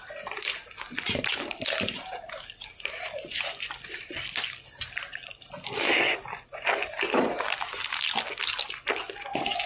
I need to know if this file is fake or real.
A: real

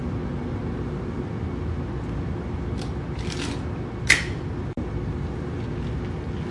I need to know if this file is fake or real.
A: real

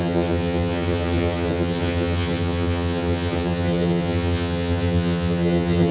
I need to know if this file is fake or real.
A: fake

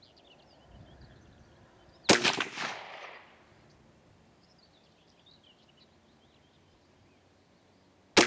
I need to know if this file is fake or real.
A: real